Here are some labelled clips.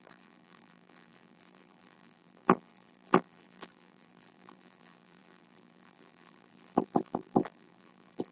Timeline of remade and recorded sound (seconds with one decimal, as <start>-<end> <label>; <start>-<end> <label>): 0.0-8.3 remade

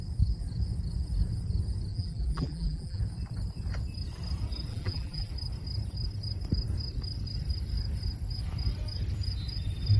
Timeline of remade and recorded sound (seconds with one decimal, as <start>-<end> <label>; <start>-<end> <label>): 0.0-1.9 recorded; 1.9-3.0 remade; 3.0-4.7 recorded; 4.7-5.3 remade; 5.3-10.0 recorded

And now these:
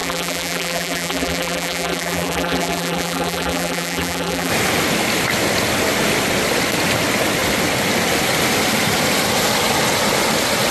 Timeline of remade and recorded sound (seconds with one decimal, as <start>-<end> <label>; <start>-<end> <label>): 0.0-4.5 remade; 4.5-10.7 recorded

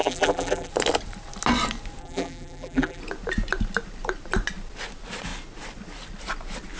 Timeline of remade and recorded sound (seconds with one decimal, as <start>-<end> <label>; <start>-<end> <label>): 0.0-0.7 remade; 0.7-2.0 recorded; 2.0-3.0 remade; 3.0-6.8 recorded

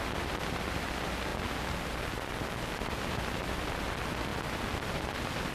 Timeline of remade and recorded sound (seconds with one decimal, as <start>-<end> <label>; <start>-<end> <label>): 0.0-1.3 remade; 1.3-2.9 recorded; 2.9-5.5 remade

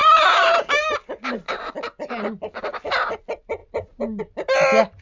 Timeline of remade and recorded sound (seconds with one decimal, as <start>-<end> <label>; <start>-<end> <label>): 0.0-1.5 remade; 1.5-5.0 recorded

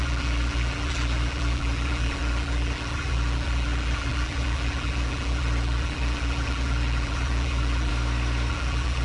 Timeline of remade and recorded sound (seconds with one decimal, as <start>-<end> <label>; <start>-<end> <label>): 0.0-7.9 remade; 7.9-8.5 recorded; 8.5-9.0 remade

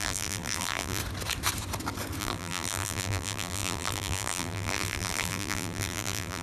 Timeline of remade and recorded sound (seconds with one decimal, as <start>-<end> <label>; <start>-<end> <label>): 0.0-1.0 remade; 1.0-2.2 recorded; 2.2-6.4 remade